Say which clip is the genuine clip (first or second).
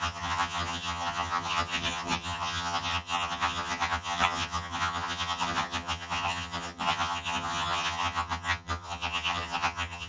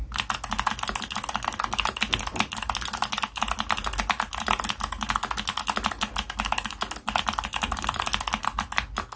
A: second